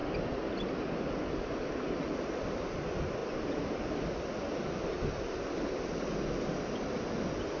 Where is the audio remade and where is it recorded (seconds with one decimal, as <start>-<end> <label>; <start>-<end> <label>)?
0.0-7.6 recorded